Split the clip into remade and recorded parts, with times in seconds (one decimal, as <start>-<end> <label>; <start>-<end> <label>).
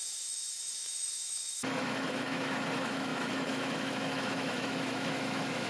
0.0-5.7 remade